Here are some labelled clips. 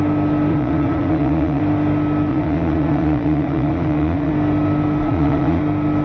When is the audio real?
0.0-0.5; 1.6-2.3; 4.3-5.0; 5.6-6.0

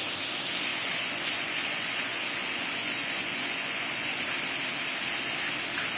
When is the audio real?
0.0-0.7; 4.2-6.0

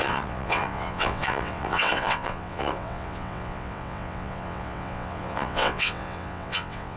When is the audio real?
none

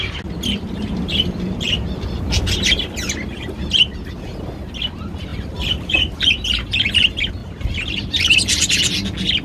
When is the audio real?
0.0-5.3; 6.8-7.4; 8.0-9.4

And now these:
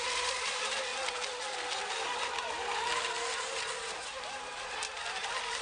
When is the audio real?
0.0-5.6

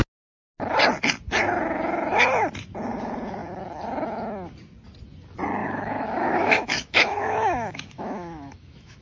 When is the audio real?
0.0-5.6